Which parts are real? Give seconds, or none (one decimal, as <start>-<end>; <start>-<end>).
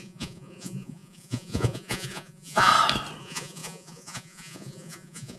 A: 2.7-3.2